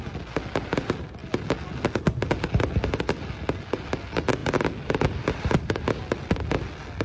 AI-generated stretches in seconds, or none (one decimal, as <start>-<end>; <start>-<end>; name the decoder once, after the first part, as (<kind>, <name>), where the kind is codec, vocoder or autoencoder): none